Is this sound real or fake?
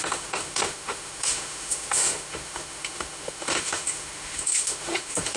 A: fake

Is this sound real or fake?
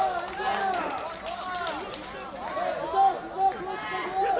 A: real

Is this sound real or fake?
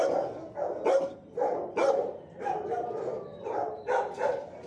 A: real